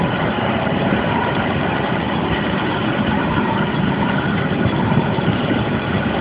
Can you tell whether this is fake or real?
fake